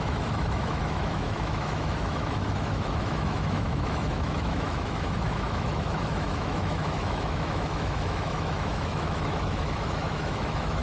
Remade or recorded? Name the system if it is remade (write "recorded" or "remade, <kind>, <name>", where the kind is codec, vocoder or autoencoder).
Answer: remade, autoencoder, DAC-VAE